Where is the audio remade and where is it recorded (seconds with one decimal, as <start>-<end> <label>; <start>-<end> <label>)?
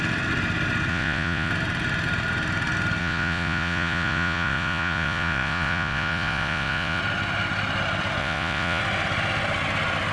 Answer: 0.0-0.9 recorded; 0.9-1.5 remade; 1.5-3.0 recorded; 3.0-7.0 remade; 7.0-8.2 recorded; 8.2-8.8 remade; 8.8-10.1 recorded